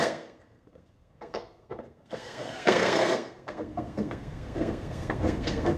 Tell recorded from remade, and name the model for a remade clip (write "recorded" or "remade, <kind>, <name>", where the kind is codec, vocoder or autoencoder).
remade, codec, SNAC